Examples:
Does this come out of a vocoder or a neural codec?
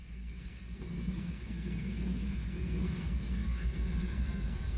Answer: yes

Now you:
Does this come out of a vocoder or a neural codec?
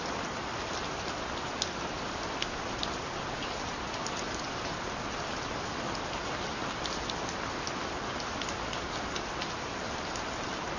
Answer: no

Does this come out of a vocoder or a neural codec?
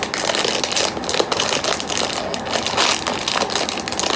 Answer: no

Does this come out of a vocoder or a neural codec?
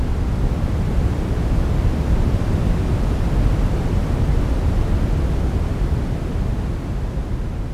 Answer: no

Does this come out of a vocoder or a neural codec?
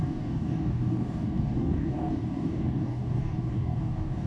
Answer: yes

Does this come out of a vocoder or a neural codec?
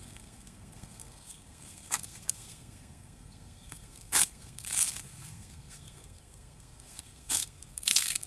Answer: yes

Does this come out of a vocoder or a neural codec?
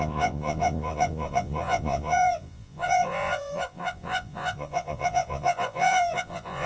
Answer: yes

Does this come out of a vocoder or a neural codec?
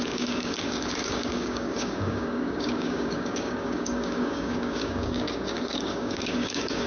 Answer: yes